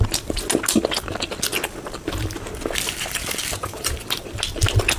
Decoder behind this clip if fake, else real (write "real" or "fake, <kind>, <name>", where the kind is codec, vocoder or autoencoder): real